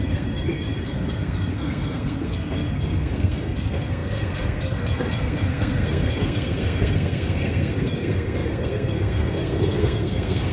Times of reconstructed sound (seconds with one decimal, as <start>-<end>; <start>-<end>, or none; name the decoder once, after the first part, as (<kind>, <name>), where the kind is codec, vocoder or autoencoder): 0.0-10.5 (codec, SNAC)